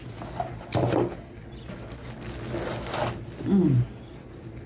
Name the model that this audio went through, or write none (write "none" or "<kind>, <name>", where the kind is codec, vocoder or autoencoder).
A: none